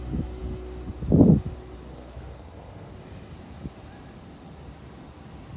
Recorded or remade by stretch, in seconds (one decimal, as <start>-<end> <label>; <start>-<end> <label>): 0.0-1.9 recorded; 1.9-2.9 remade; 2.9-5.6 recorded